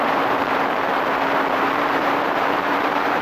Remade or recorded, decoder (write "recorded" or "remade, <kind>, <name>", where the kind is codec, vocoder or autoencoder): remade, vocoder, BigVGAN v2